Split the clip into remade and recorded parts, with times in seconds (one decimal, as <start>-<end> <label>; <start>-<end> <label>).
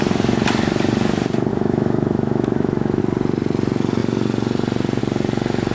0.0-1.5 recorded; 1.5-3.0 remade; 3.0-5.7 recorded